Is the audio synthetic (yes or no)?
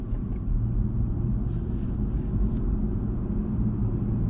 no